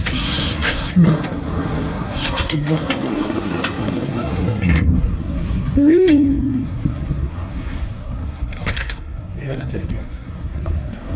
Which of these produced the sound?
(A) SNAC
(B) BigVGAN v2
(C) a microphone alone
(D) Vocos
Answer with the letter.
A